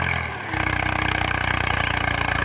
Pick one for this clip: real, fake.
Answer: real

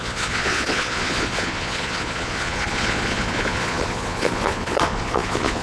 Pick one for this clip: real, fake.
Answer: fake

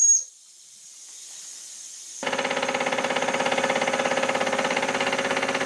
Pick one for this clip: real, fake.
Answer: real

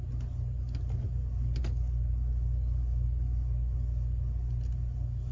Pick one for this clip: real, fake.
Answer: real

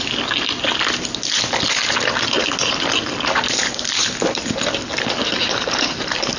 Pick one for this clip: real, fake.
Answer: real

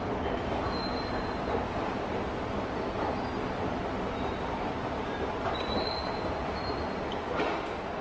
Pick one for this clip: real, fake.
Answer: real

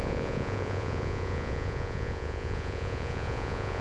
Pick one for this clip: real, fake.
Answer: fake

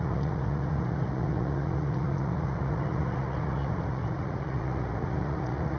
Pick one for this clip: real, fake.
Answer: fake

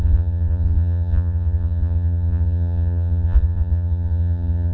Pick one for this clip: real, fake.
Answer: fake